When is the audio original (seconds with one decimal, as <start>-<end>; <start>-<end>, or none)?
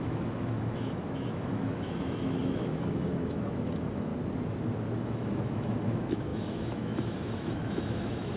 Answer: 4.1-5.0